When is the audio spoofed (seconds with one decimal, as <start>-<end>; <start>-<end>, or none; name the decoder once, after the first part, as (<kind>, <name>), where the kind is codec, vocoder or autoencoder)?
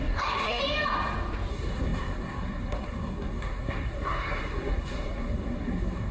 0.0-0.6 (codec, SNAC); 1.5-6.1